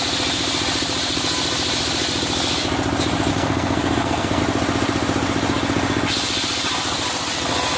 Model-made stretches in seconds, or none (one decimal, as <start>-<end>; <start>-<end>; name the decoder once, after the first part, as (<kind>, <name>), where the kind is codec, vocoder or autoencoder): 3.3-4.4 (codec, SNAC)